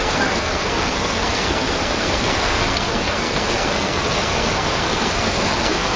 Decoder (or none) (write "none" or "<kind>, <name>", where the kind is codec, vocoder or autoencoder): codec, SNAC